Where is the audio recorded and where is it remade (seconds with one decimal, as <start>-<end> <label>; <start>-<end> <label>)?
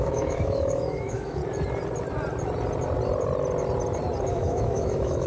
0.0-1.4 remade; 1.4-4.3 recorded; 4.3-5.3 remade